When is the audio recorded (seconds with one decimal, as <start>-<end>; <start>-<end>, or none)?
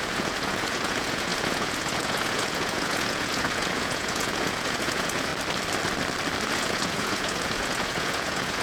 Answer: 5.3-6.5